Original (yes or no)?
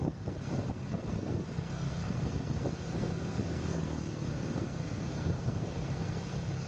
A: no